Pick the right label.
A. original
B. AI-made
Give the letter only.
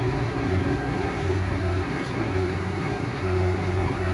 B